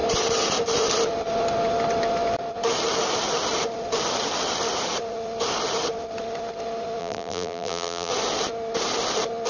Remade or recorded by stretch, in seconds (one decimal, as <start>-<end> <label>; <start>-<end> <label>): 0.0-7.0 recorded; 7.0-8.1 remade; 8.1-9.5 recorded